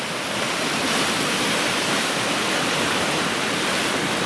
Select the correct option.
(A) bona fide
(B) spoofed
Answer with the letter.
A